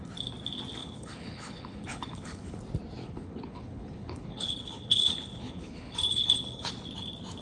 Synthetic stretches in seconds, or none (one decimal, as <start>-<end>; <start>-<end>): 0.8-2.6; 3.0-6.7